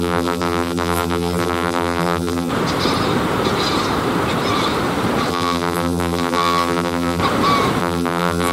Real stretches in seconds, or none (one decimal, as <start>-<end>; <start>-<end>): 2.5-5.3; 7.2-7.8